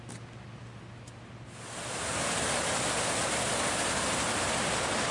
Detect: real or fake real